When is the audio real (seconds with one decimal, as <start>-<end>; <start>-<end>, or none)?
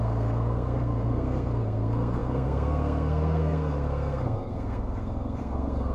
none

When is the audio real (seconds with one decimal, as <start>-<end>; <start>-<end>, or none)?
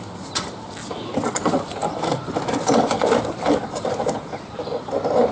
0.0-0.8; 1.3-1.8; 4.6-5.3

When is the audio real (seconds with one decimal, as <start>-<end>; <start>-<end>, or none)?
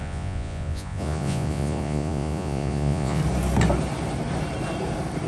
3.2-5.3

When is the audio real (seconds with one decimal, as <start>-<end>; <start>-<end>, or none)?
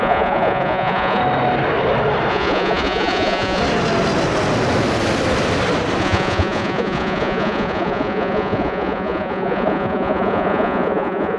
1.2-2.3; 3.6-6.0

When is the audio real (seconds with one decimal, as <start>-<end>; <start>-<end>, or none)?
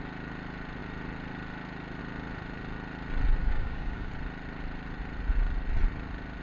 0.0-3.4; 4.1-6.4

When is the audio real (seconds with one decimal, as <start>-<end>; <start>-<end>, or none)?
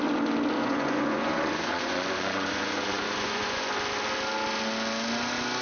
0.0-0.6; 3.7-5.6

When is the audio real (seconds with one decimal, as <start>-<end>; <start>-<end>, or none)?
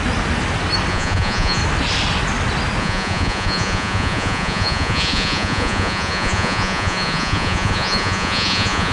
0.0-0.9; 1.6-2.8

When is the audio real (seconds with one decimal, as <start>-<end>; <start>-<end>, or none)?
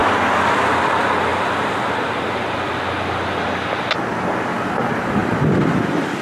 0.0-6.2